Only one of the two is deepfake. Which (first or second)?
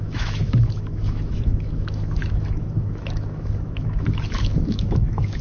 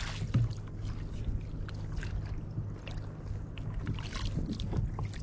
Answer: first